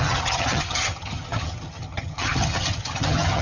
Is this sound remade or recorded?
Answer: remade